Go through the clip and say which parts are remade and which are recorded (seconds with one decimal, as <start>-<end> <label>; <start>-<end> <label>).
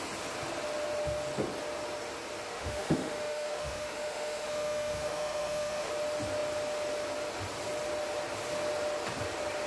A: 0.0-2.5 recorded; 2.5-5.9 remade; 5.9-9.7 recorded